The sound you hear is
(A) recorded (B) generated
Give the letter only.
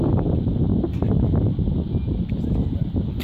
A